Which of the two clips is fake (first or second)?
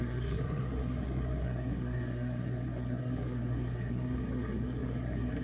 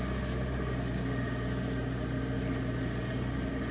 first